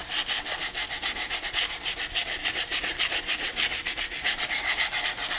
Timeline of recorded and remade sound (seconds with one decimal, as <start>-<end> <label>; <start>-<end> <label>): 0.0-5.4 recorded